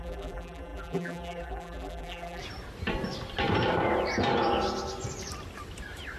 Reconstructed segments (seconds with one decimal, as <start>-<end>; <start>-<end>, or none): 0.0-2.4